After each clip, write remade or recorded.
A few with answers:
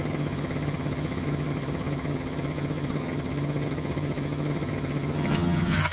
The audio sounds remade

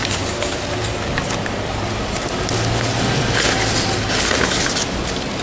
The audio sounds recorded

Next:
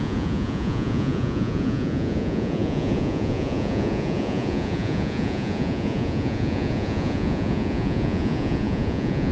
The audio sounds remade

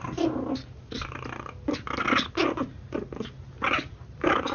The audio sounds recorded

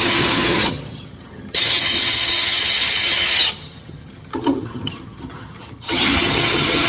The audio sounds remade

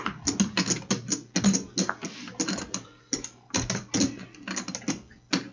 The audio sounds recorded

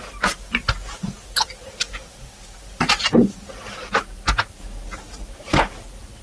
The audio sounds recorded